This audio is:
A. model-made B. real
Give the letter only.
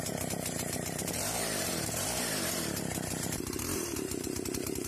A